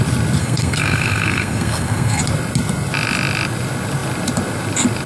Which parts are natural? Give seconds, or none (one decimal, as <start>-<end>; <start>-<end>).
0.0-0.4; 2.2-5.1

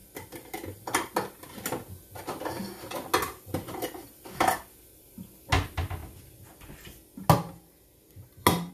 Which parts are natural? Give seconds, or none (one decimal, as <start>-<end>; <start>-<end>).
0.0-8.7

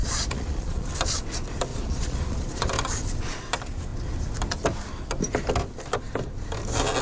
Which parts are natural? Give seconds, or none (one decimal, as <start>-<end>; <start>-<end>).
0.9-1.7; 2.7-7.0

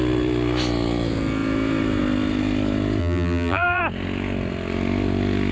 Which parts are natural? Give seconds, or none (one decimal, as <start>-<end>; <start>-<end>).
0.0-3.0; 3.8-5.5

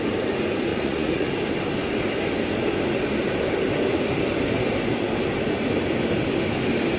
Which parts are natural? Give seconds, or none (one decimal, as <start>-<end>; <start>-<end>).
0.0-0.7; 1.3-7.0